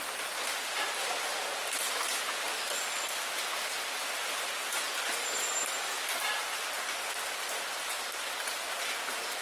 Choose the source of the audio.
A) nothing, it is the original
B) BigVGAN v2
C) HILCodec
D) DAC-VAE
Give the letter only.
A